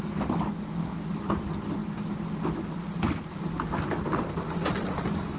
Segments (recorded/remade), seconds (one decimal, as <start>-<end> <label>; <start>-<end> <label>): 0.0-5.4 recorded